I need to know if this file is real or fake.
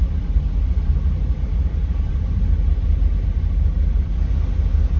fake